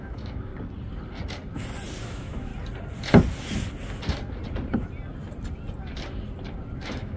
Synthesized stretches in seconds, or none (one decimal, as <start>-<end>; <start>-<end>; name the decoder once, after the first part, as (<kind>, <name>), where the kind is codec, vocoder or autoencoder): 0.0-0.5 (autoencoder, DAC-VAE); 2.0-2.5; 6.8-7.2